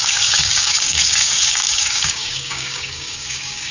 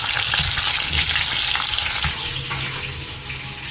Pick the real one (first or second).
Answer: second